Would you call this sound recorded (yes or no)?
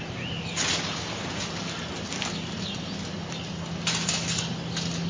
yes